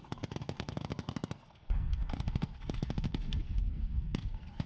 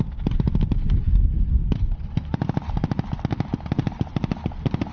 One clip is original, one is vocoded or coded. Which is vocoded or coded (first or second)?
first